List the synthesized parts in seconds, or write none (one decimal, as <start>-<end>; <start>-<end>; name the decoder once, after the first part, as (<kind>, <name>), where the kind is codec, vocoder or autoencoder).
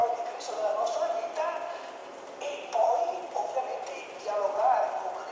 0.0-0.5 (vocoder, BigVGAN v2); 2.0-3.6